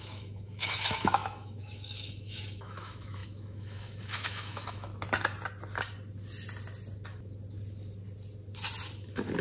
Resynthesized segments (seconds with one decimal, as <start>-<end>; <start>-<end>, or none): 0.0-4.9